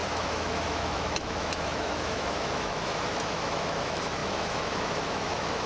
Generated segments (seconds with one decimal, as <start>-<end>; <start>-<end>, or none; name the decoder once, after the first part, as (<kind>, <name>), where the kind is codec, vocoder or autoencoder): 0.0-5.7 (autoencoder, DAC-VAE)